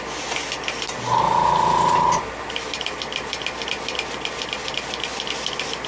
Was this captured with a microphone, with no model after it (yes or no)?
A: yes